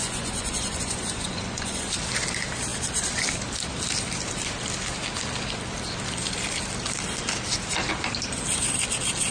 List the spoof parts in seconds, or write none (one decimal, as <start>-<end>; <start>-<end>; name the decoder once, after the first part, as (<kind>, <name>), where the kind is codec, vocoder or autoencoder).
0.0-1.9 (vocoder, Vocos)